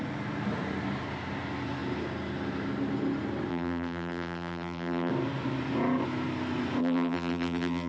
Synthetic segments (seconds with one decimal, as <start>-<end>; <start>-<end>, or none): 3.5-5.1; 6.8-7.9